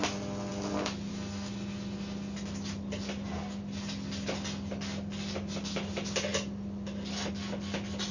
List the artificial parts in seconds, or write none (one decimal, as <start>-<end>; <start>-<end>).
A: none